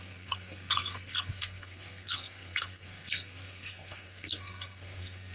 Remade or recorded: remade